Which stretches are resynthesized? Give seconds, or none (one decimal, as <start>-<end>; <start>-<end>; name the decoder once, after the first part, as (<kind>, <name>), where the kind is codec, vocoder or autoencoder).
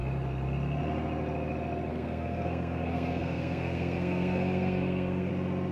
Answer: 1.9-5.3 (codec, SNAC)